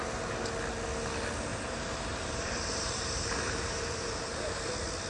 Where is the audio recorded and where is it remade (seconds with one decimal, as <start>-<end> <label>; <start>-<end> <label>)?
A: 0.0-1.5 recorded; 1.5-4.6 remade; 4.6-5.1 recorded